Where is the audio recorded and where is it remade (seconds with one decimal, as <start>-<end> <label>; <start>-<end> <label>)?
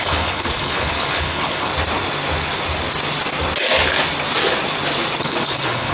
0.0-1.7 remade; 1.7-5.2 recorded; 5.2-5.9 remade